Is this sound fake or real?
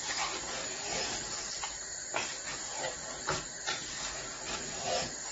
real